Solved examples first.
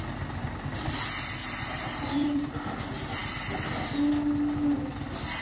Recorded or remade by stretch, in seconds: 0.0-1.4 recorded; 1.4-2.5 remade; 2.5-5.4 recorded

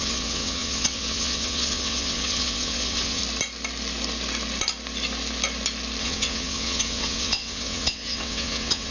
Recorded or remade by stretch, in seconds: 0.0-3.2 remade; 3.2-6.0 recorded; 6.0-8.9 remade

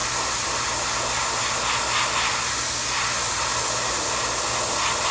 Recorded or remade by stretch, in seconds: 0.0-5.1 recorded

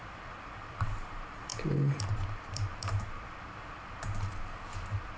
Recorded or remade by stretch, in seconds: 0.0-5.2 remade